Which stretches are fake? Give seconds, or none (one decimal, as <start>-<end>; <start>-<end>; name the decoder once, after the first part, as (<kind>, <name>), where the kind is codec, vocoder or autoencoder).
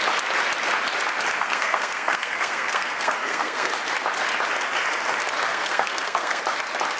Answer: 1.4-3.7 (codec, SNAC); 5.5-6.4